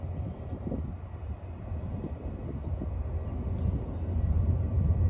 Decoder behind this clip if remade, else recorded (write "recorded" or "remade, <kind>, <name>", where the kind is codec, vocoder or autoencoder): recorded